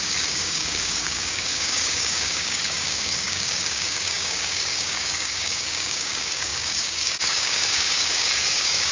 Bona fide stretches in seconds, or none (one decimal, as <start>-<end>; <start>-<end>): none